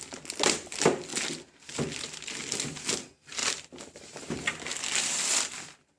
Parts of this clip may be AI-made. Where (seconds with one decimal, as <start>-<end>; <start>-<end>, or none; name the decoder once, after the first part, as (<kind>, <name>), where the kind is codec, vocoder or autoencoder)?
none